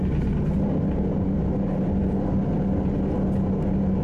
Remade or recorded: recorded